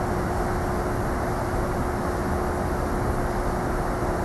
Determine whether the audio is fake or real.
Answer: real